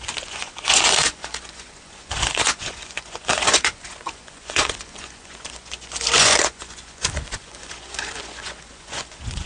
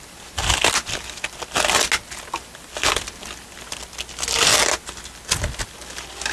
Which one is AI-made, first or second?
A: first